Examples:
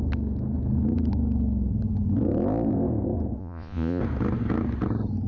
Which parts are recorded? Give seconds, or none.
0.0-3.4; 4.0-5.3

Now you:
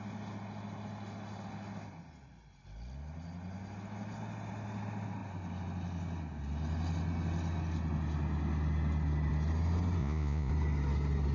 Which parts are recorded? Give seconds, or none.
0.0-10.0; 10.5-11.3

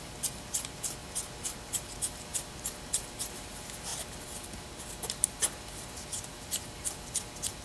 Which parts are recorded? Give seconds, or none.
1.0-1.5

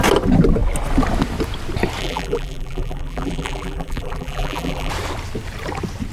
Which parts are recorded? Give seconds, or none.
0.0-2.0; 4.9-6.1